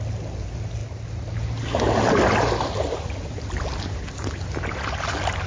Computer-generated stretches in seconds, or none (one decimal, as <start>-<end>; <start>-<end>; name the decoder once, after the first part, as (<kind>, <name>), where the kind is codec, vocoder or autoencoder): none

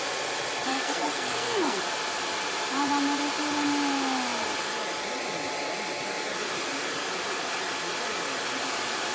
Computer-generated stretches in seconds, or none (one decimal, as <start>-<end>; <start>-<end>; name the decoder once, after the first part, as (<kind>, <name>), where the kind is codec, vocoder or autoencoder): 0.7-1.8 (codec, SNAC)

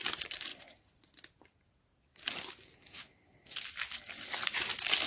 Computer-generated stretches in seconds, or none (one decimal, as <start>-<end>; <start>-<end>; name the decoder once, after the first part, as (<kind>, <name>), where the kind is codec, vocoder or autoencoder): none

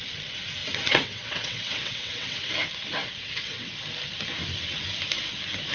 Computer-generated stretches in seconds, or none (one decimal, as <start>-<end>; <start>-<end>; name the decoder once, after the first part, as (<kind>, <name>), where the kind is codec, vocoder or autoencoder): 0.6-2.5 (vocoder, WaveNeXt); 3.0-3.7

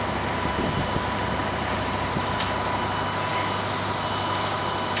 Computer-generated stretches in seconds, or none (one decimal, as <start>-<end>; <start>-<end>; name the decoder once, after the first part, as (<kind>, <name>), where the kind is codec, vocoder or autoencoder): 1.4-2.2 (vocoder, BigVGAN v2)

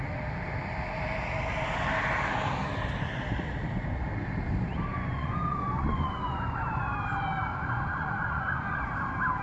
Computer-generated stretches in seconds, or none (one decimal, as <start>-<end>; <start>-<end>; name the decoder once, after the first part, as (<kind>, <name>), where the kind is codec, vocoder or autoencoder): 4.9-6.8 (vocoder, Vocos); 7.5-8.9

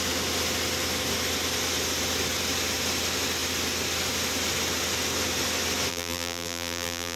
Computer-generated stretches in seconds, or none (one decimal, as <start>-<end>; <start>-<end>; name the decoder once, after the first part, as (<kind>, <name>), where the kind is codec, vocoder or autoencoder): 5.9-7.2 (vocoder, BigVGAN v2)

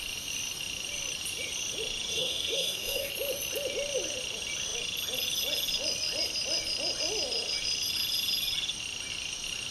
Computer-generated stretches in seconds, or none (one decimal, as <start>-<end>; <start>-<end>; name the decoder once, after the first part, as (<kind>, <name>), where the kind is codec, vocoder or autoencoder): 2.1-3.1 (codec, DAC)